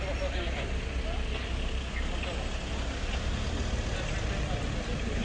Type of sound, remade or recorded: recorded